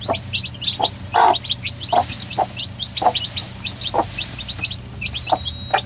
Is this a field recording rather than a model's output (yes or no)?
yes